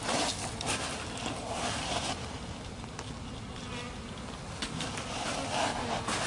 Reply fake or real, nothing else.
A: real